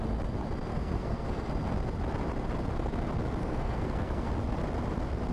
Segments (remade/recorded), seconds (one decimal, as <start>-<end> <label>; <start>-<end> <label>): 0.0-0.7 recorded; 0.7-1.5 remade; 1.5-3.4 recorded; 3.4-4.3 remade; 4.3-5.3 recorded